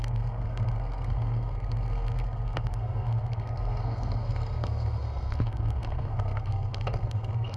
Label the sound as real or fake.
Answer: fake